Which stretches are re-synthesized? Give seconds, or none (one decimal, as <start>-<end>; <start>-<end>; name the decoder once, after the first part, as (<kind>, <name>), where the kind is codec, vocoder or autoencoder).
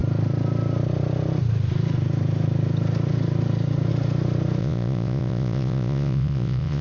4.6-6.8 (vocoder, Vocos)